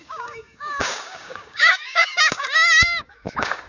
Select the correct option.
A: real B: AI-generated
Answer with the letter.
B